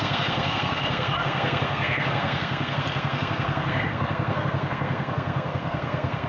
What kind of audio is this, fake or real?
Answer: fake